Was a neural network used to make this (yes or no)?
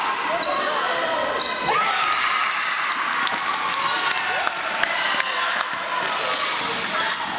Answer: no